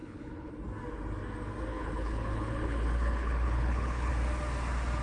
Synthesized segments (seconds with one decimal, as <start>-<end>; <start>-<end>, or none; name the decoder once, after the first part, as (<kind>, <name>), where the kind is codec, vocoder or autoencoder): 0.0-0.5 (codec, HILCodec); 1.7-4.1